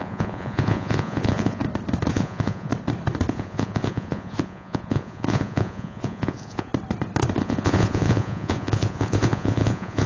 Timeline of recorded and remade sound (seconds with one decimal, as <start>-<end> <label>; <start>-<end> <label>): 0.0-1.6 remade; 1.6-2.1 recorded; 2.1-2.7 remade; 2.7-3.3 recorded; 3.3-6.7 remade; 6.7-7.4 recorded; 7.4-10.1 remade

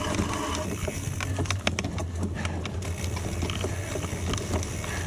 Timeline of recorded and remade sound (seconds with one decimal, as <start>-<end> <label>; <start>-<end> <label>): 0.0-5.1 recorded

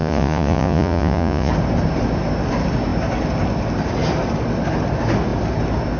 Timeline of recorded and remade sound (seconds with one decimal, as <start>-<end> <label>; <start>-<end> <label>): 0.0-1.5 remade; 1.5-6.0 recorded

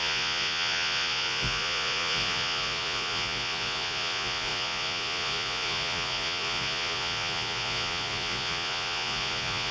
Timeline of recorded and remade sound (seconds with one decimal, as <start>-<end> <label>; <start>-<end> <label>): 0.0-9.7 remade

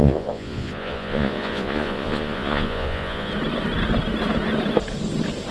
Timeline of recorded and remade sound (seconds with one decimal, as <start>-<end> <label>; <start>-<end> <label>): 0.0-3.3 remade; 3.3-5.5 recorded

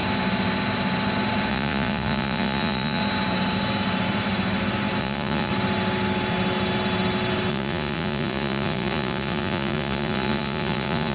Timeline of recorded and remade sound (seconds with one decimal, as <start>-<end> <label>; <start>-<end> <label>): 0.0-1.5 recorded; 1.5-3.0 remade; 3.0-5.0 recorded; 5.0-5.5 remade; 5.5-7.5 recorded; 7.5-11.1 remade

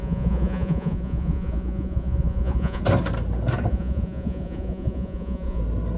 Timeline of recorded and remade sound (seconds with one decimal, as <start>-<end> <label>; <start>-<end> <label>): 0.0-2.8 remade; 2.8-3.7 recorded; 3.7-5.6 remade; 5.6-6.0 recorded